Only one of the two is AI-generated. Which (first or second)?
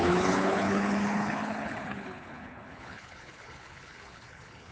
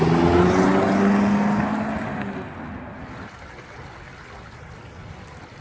first